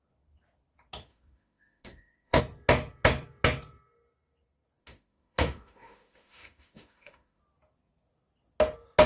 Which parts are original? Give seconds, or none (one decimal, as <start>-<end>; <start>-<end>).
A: 0.0-1.1; 2.4-4.8; 7.4-9.1